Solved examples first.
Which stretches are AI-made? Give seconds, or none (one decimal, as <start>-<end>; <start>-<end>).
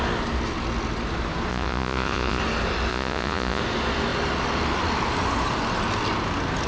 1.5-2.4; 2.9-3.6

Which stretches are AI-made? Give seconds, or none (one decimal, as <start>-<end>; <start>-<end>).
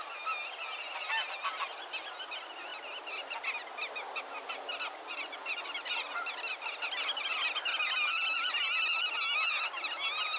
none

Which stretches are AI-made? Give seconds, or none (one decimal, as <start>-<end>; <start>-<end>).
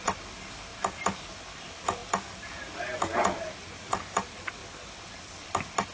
none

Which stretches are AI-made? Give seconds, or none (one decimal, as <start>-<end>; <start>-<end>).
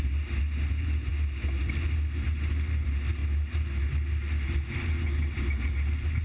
none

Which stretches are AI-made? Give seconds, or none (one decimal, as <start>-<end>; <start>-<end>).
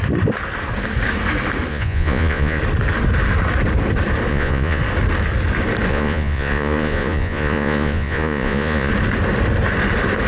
1.7-2.6; 4.3-4.8; 5.9-8.9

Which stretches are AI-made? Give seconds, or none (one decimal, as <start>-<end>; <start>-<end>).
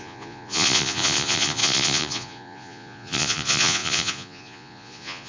0.0-5.3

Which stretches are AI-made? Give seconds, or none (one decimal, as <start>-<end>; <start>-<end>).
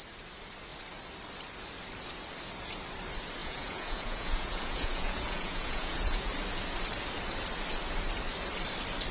3.4-6.2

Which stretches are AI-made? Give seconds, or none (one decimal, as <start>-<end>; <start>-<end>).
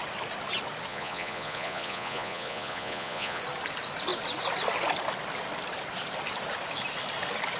0.9-3.4